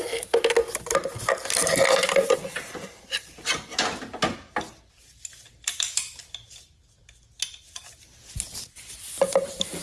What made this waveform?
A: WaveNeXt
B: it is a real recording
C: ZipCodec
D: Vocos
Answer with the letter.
B